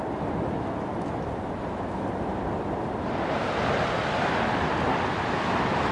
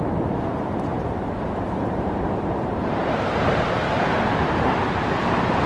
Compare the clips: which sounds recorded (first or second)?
first